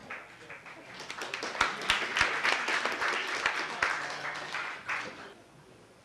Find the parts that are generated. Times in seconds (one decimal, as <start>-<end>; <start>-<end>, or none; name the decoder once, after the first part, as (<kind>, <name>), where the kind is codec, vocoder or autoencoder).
4.6-6.0 (vocoder, Vocos)